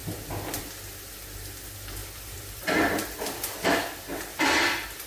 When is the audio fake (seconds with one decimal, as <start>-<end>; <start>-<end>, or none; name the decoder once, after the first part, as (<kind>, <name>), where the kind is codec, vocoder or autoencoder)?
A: 2.0-3.7 (vocoder, BigVGAN v2); 4.3-5.1